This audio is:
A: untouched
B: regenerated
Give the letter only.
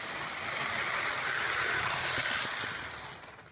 A